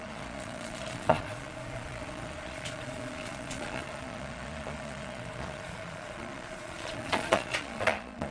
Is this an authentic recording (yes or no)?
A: no